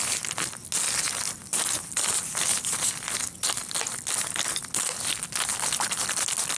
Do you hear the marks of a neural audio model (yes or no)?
no